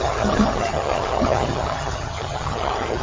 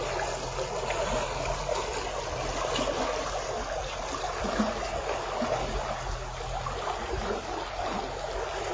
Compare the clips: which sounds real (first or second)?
second